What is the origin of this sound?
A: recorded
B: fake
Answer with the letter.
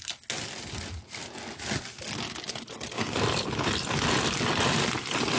A